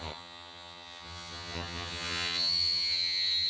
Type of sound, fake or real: fake